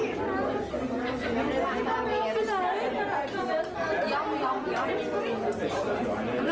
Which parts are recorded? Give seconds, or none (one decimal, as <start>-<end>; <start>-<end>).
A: 0.0-6.5